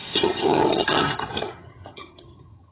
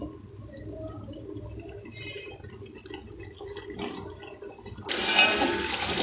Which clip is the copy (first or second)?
first